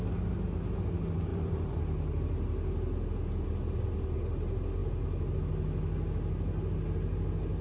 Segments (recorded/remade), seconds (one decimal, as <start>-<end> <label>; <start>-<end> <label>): 0.0-1.3 recorded; 1.3-1.8 remade; 1.8-7.6 recorded